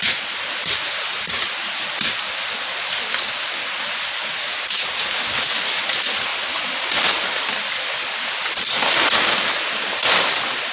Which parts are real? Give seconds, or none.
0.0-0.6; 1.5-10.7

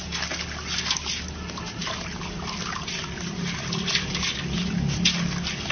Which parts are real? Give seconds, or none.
0.0-1.8; 3.4-5.7

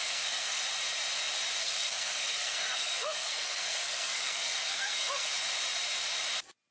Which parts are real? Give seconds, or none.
0.6-1.6; 5.3-6.7

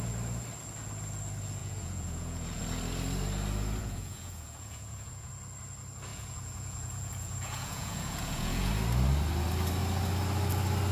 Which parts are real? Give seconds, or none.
0.0-1.6; 2.6-3.8; 5.3-6.1; 8.7-10.9

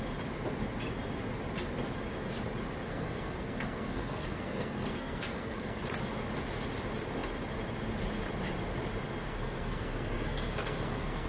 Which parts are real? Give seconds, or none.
0.0-2.9; 5.9-9.2